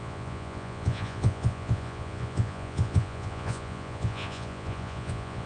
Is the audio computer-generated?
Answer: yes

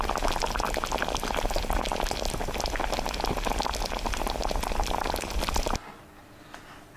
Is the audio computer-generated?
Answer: no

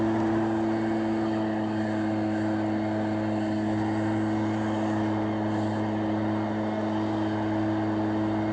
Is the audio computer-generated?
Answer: no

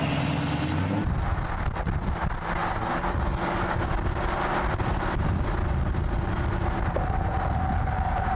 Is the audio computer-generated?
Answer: no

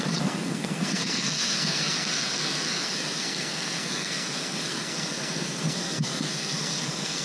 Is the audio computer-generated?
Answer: yes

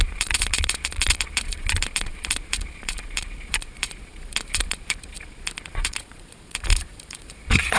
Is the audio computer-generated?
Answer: yes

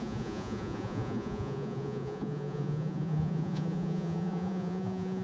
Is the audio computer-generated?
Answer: yes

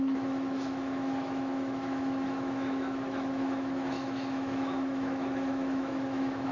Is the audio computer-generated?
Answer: yes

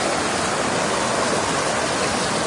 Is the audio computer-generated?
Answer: no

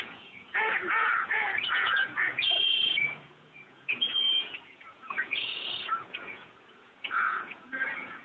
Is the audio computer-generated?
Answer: yes